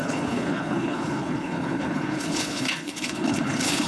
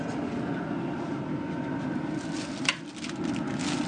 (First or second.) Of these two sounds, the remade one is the first